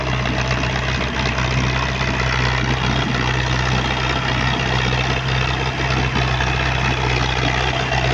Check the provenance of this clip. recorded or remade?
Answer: recorded